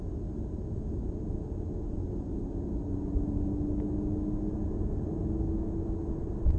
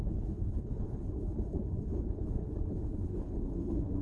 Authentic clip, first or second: first